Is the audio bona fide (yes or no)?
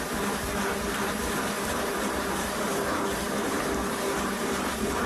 no